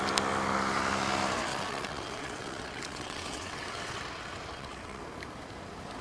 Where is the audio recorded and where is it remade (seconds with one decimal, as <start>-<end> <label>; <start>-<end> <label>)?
0.0-1.5 recorded; 1.5-4.0 remade; 4.0-4.5 recorded; 4.5-5.0 remade; 5.0-6.0 recorded

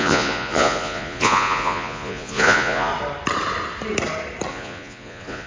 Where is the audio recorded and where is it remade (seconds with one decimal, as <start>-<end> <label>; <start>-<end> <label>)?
0.0-2.9 remade; 2.9-4.5 recorded; 4.5-5.5 remade

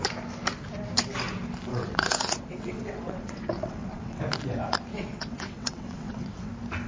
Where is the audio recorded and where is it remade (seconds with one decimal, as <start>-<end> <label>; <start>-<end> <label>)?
0.0-1.7 recorded; 1.7-4.2 remade; 4.2-4.9 recorded; 4.9-6.5 remade; 6.5-6.9 recorded

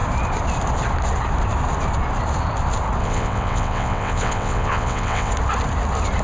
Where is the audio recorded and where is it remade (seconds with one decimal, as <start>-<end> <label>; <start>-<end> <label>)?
0.0-3.0 recorded; 3.0-5.3 remade; 5.3-6.2 recorded

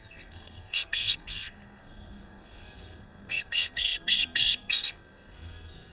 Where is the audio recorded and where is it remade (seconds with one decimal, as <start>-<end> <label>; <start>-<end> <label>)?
0.0-5.9 remade

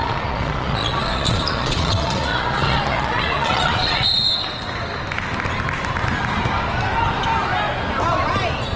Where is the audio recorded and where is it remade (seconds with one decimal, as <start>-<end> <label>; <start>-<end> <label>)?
0.0-4.3 remade; 4.3-8.8 recorded

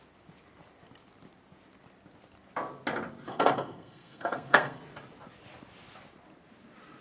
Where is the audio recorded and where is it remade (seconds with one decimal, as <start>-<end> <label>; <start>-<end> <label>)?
0.0-3.3 recorded; 3.3-4.8 remade; 4.8-7.0 recorded